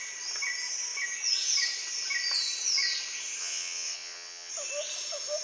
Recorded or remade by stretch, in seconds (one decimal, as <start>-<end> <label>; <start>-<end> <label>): 0.0-3.4 recorded; 3.4-4.5 remade; 4.5-5.4 recorded